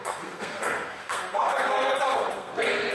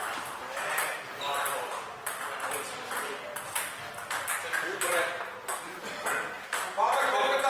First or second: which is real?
second